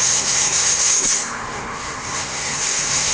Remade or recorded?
remade